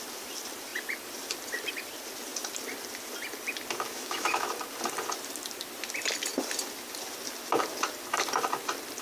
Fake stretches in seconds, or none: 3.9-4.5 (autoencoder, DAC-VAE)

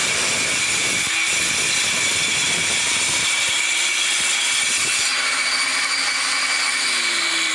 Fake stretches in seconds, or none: 0.0-4.5 (vocoder, BigVGAN v2)

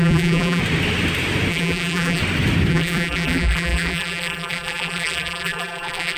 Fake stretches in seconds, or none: 0.0-0.6 (vocoder, BigVGAN v2); 1.5-2.2; 2.7-6.2

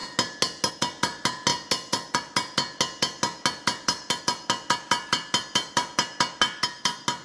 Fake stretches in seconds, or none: none

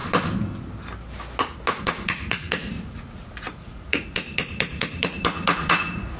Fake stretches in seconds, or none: 1.8-6.2 (vocoder, Vocos)